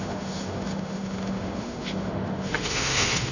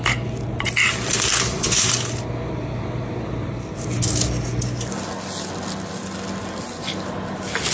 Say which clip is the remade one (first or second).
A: first